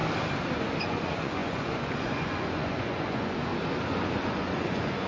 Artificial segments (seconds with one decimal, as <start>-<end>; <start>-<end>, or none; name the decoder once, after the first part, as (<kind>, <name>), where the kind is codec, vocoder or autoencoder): 0.8-3.5 (vocoder, Vocos); 4.1-5.1